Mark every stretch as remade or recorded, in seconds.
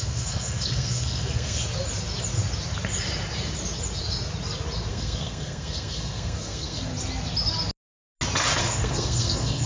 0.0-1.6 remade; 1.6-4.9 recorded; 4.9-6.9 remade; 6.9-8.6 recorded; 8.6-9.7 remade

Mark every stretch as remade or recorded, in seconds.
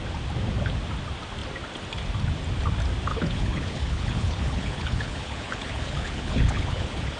0.0-3.1 recorded; 3.1-7.2 remade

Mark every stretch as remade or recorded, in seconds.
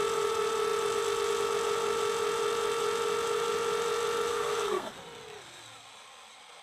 0.0-4.3 recorded; 4.3-4.9 remade; 4.9-6.6 recorded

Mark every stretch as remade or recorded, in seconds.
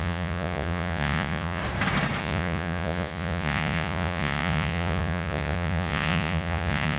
0.0-1.6 remade; 1.6-2.2 recorded; 2.2-7.0 remade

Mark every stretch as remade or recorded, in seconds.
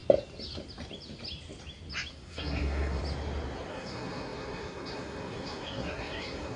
0.0-2.1 recorded; 2.1-3.0 remade; 3.0-3.7 recorded; 3.7-6.6 remade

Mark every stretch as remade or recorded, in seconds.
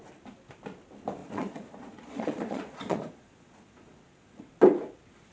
0.0-1.2 recorded; 1.2-4.4 remade; 4.4-5.3 recorded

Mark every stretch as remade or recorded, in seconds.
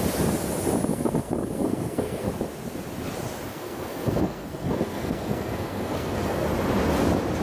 0.0-0.9 recorded; 0.9-2.3 remade; 2.3-3.5 recorded; 3.5-6.5 remade; 6.5-7.4 recorded